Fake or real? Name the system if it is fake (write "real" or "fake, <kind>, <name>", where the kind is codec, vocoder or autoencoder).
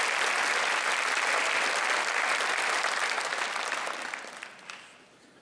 real